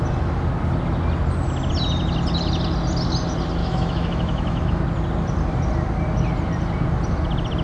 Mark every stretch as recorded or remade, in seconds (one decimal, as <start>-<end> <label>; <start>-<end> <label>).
0.0-3.6 recorded; 3.6-4.8 remade; 4.8-7.6 recorded